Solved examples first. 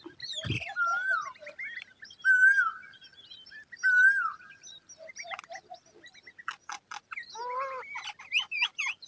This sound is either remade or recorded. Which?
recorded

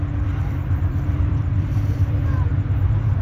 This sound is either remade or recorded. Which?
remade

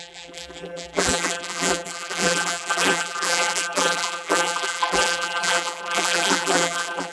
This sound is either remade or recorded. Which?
remade